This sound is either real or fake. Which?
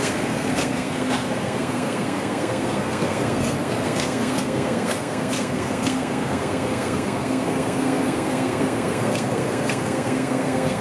fake